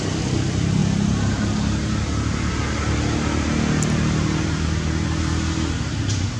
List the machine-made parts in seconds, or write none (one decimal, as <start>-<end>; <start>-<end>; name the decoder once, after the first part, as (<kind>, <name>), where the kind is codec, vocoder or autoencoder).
none